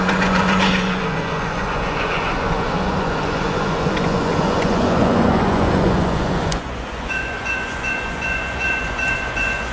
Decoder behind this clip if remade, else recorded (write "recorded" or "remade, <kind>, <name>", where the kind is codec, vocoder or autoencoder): remade, vocoder, Vocos